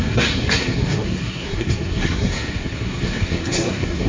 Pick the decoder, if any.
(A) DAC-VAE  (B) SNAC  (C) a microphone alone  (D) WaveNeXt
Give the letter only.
B